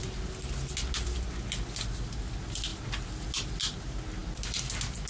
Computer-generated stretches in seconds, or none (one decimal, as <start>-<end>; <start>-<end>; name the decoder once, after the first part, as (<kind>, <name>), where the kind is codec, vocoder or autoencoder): none